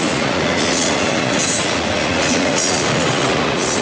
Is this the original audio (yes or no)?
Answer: no